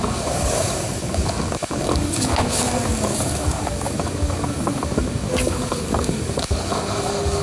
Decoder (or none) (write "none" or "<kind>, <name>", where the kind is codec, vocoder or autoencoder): codec, DAC